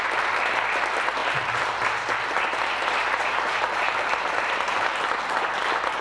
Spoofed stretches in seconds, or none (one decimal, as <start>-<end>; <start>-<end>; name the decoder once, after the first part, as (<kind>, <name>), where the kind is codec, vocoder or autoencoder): 1.2-4.4 (vocoder, BigVGAN v2)